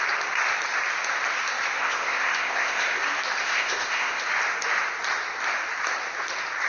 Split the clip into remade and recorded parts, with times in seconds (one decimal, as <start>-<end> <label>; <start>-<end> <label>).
0.0-1.8 recorded; 1.8-3.0 remade; 3.0-3.4 recorded; 3.4-4.2 remade; 4.2-6.7 recorded